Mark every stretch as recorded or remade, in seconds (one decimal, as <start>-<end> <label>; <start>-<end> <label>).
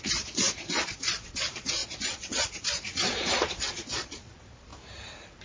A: 0.0-4.7 remade; 4.7-5.4 recorded